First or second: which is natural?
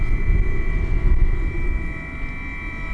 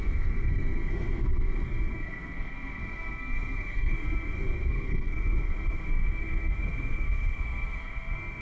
first